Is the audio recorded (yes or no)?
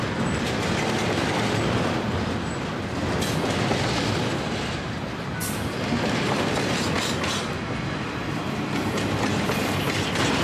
yes